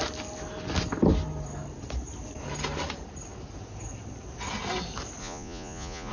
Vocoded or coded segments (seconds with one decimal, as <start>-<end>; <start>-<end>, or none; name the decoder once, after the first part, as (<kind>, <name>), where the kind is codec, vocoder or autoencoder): 5.2-6.1 (vocoder, Vocos)